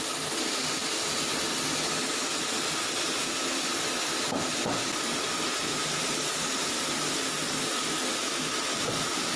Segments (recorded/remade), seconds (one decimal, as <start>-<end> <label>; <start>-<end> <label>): 0.0-9.4 recorded